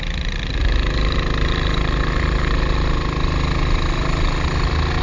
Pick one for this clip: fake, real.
real